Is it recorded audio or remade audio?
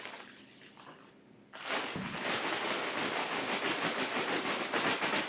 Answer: remade